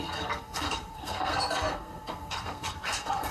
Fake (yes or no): yes